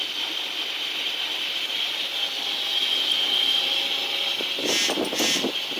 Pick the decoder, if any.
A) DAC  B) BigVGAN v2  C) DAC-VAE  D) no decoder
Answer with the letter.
D